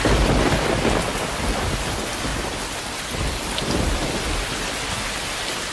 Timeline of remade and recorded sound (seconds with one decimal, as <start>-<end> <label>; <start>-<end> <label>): 0.0-5.7 recorded